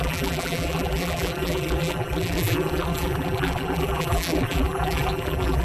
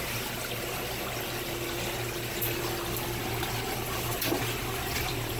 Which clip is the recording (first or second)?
second